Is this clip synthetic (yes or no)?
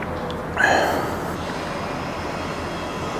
no